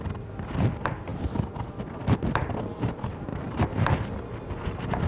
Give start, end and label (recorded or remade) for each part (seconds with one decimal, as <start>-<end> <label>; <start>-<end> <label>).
0.0-5.1 recorded